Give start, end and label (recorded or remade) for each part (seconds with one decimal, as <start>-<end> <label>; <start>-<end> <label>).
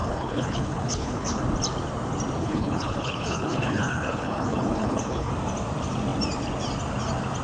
0.0-1.4 remade; 1.4-2.4 recorded; 2.4-5.3 remade; 5.3-7.4 recorded